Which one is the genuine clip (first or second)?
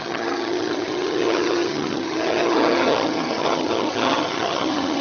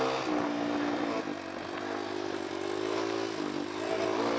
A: second